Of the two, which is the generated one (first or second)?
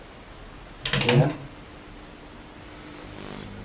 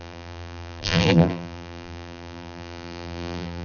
second